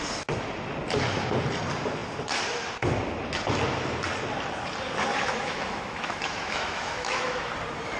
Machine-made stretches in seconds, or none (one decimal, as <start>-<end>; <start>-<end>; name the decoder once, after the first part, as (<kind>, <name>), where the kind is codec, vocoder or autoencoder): 5.1-7.5 (autoencoder, DAC-VAE)